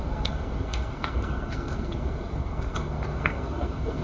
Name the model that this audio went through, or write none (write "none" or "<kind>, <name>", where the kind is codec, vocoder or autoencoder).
codec, SNAC